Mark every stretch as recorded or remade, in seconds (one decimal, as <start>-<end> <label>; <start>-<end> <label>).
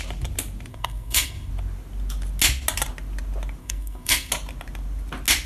0.0-0.7 recorded; 0.7-1.5 remade; 1.5-3.6 recorded; 3.6-4.3 remade; 4.3-5.5 recorded